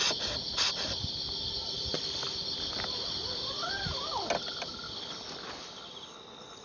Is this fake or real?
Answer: real